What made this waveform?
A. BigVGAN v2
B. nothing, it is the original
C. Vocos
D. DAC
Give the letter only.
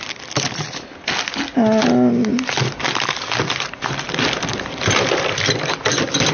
B